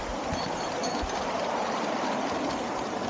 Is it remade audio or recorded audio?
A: recorded